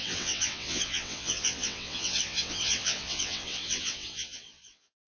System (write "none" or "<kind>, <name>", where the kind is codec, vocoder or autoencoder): vocoder, WaveNeXt